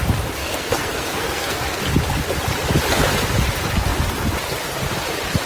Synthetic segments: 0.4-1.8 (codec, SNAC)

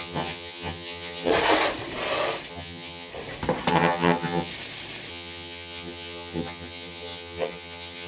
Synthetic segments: 0.0-1.3 (vocoder, HiFi-GAN); 2.5-3.1; 3.7-4.5; 5.1-8.1

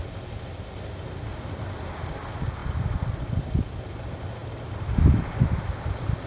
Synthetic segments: 2.6-3.8 (vocoder, BigVGAN v2)

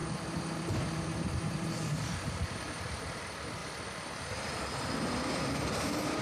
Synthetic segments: 0.0-3.2 (vocoder, BigVGAN v2); 3.6-4.6

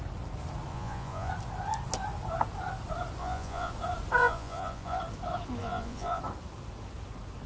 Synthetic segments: 0.7-1.3 (vocoder, Vocos); 3.2-3.7; 4.2-5.0; 5.6-6.2

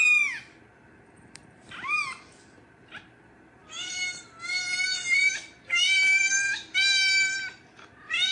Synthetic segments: 3.6-4.2 (vocoder, BigVGAN v2)